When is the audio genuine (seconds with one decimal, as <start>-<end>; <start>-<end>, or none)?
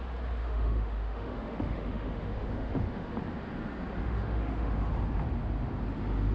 0.0-0.4; 3.1-4.0; 4.9-6.3